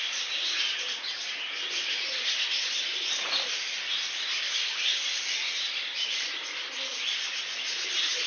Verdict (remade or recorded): remade